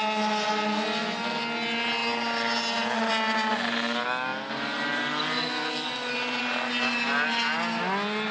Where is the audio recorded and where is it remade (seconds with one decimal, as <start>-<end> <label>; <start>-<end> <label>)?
0.0-8.3 recorded

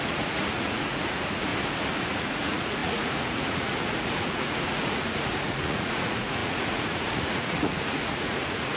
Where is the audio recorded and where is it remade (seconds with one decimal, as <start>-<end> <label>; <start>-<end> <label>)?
0.0-1.5 remade; 1.5-2.1 recorded; 2.1-8.8 remade

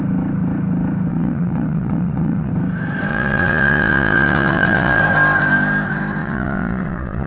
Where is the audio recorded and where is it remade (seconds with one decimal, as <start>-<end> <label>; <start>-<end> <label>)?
0.0-1.1 recorded; 1.1-2.5 remade; 2.5-3.1 recorded; 3.1-5.0 remade; 5.0-6.2 recorded; 6.2-7.3 remade

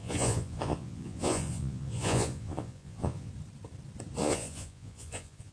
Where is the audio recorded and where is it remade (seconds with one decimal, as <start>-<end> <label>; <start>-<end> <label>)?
0.0-3.3 remade; 3.3-4.2 recorded; 4.2-5.5 remade